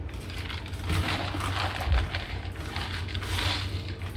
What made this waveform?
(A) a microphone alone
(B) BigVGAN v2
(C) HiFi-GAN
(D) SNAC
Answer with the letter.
A